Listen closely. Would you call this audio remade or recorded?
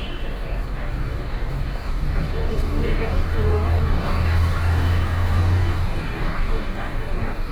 remade